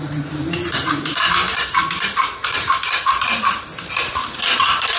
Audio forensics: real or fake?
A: fake